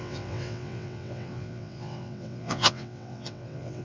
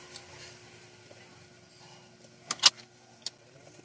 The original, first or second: second